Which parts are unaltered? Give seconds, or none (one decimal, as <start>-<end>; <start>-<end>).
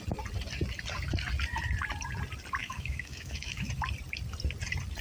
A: 0.0-2.6; 3.7-5.0